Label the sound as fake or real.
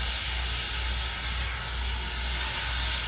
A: real